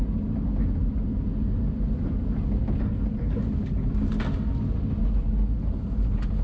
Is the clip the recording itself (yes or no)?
yes